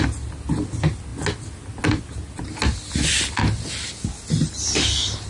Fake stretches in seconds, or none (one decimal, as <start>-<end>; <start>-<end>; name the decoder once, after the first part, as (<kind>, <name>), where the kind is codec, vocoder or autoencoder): none